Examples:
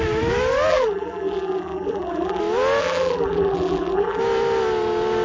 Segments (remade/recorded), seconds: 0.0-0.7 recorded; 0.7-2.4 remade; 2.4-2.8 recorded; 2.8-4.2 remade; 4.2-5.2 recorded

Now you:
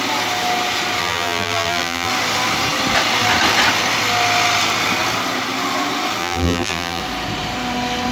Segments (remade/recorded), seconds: 0.0-1.0 recorded; 1.0-2.1 remade; 2.1-6.2 recorded; 6.2-7.0 remade; 7.0-8.1 recorded

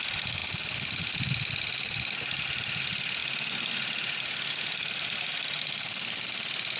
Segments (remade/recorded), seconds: 0.0-0.4 remade; 0.4-2.8 recorded; 2.8-3.2 remade; 3.2-4.5 recorded; 4.5-6.8 remade

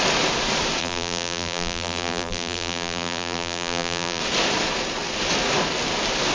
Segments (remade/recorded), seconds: 0.0-0.8 recorded; 0.8-4.2 remade; 4.2-6.3 recorded

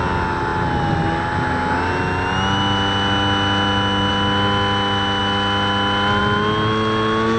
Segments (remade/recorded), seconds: 0.0-7.4 recorded

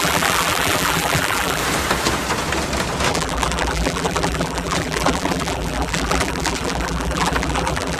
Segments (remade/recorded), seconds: 0.0-1.6 remade; 1.6-3.1 recorded; 3.1-8.0 remade

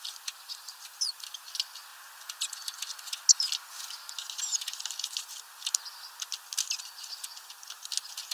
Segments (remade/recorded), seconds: 0.0-7.3 recorded; 7.3-7.9 remade; 7.9-8.3 recorded

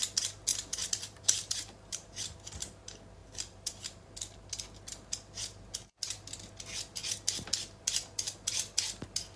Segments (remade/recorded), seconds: 0.0-0.5 recorded; 0.5-2.2 remade; 2.2-3.2 recorded; 3.2-4.5 remade; 4.5-9.4 recorded